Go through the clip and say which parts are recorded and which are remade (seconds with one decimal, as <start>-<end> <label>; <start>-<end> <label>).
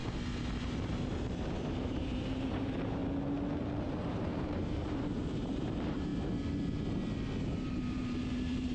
0.0-0.9 recorded; 0.9-3.0 remade; 3.0-3.8 recorded; 3.8-6.1 remade; 6.1-7.7 recorded; 7.7-8.7 remade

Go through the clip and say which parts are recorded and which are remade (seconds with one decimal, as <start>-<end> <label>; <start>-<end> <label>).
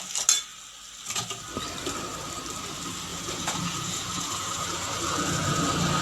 0.0-3.1 recorded; 3.1-5.6 remade; 5.6-6.0 recorded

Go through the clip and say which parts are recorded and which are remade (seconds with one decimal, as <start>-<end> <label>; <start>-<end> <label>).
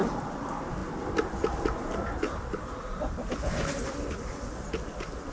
0.0-5.3 recorded